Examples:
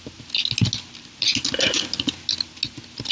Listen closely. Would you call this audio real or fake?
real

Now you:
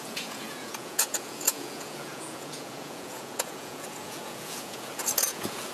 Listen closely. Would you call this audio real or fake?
fake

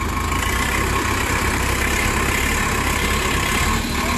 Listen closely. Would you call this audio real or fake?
real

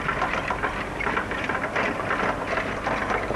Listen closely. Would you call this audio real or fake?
real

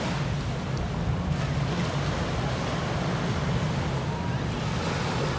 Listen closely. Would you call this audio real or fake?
real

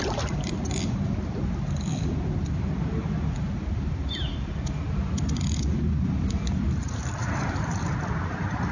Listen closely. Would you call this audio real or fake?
real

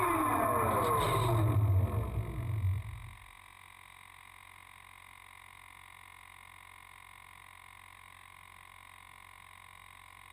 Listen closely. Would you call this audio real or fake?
real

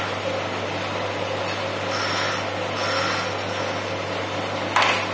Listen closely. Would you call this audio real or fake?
real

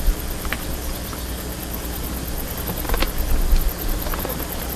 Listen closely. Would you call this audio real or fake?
real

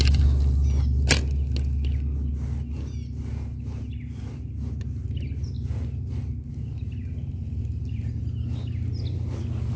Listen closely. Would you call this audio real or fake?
real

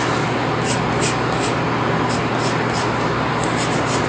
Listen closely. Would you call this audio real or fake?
real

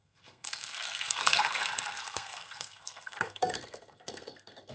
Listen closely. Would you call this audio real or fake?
fake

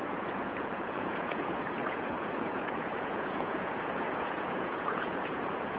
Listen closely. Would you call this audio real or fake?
fake